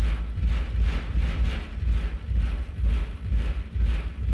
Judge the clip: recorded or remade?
recorded